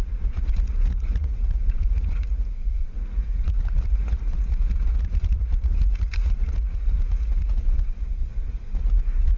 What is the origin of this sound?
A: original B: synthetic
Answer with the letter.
B